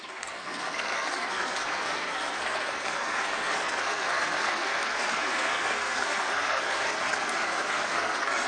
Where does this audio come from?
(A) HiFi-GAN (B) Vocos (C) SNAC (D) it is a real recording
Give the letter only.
C